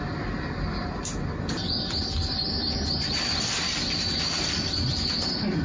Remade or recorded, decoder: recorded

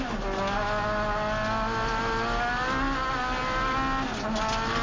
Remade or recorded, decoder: recorded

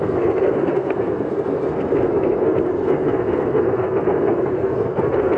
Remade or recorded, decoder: remade, codec, SNAC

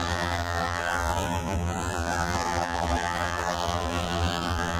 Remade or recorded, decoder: remade, vocoder, BigVGAN v2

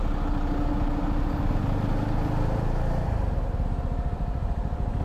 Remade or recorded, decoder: recorded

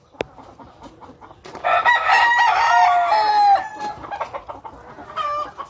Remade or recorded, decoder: recorded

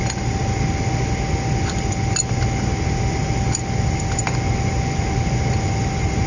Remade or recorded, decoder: recorded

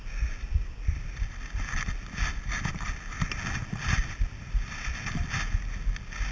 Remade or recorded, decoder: recorded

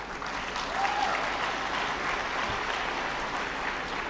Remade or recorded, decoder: recorded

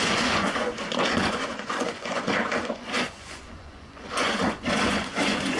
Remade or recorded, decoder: remade, vocoder, Vocos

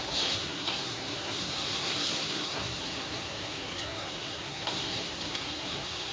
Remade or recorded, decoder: remade, codec, SNAC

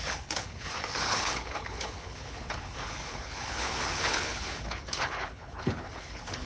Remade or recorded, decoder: remade, codec, HILCodec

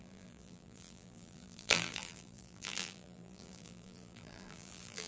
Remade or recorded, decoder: remade, vocoder, BigVGAN v2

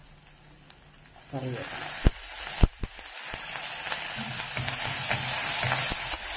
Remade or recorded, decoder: recorded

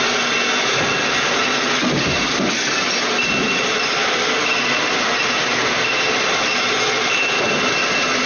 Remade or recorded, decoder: recorded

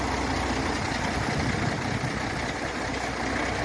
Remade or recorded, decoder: recorded